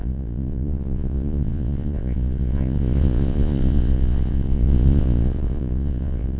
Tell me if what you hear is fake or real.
fake